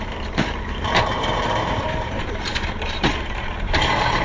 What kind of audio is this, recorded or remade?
remade